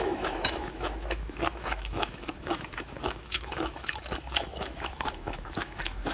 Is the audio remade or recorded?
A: remade